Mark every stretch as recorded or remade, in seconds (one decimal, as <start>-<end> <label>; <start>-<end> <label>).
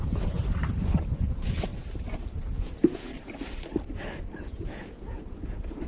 0.0-0.4 remade; 0.4-1.0 recorded; 1.0-1.7 remade; 1.7-2.3 recorded; 2.3-3.1 remade; 3.1-4.2 recorded; 4.2-5.9 remade